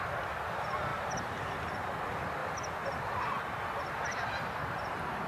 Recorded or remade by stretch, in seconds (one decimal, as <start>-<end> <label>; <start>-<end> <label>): 0.0-0.9 recorded; 0.9-1.8 remade; 1.8-5.3 recorded